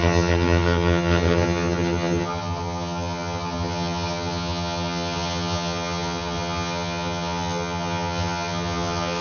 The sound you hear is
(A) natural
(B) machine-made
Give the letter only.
B